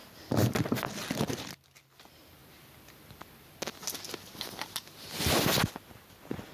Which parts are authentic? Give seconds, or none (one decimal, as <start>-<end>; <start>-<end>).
0.0-6.5